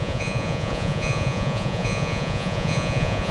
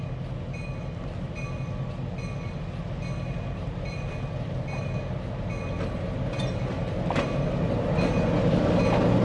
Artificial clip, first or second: first